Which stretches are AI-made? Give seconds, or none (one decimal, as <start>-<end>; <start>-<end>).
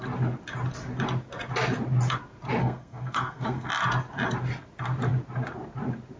2.6-3.7